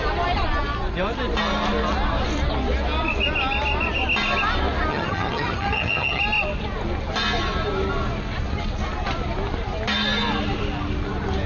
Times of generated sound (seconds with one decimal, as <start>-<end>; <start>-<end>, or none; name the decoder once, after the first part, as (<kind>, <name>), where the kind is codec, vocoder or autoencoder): 4.9-6.2 (vocoder, HiFi-GAN)